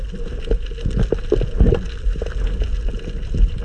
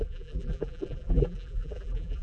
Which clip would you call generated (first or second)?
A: second